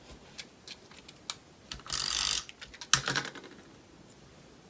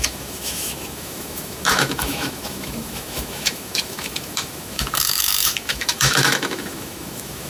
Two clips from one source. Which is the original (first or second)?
first